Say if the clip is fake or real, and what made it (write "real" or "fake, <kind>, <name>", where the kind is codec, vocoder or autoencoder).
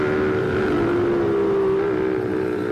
real